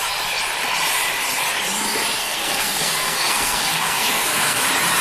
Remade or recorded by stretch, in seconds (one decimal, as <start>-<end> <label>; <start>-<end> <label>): 0.0-2.2 recorded; 2.2-4.6 remade; 4.6-5.0 recorded